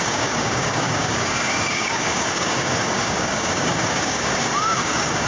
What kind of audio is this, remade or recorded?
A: remade